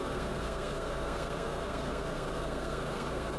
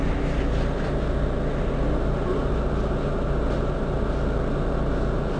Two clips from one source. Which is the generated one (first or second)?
first